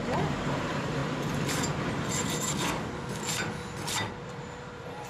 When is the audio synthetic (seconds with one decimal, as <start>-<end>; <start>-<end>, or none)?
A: 0.0-1.0; 4.1-5.1